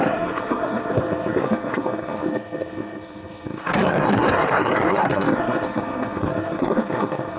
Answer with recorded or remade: remade